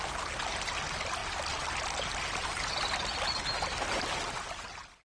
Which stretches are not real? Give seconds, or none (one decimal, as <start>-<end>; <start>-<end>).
none